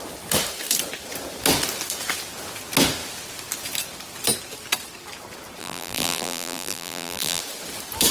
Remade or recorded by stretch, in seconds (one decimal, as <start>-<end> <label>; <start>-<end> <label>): 0.0-5.6 recorded; 5.6-7.4 remade; 7.4-8.1 recorded